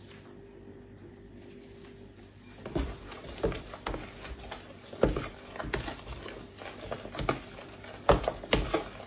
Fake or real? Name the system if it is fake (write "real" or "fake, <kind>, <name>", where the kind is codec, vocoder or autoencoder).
real